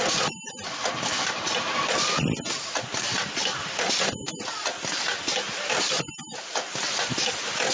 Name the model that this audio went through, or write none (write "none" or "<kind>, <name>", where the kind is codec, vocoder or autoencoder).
none